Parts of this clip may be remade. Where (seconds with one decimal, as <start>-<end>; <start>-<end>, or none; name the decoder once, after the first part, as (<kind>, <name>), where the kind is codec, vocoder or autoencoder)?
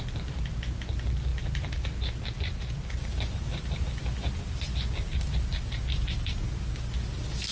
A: none